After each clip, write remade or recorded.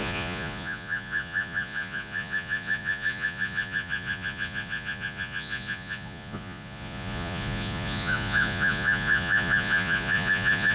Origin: remade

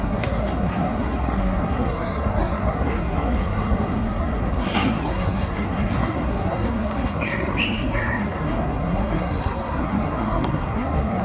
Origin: remade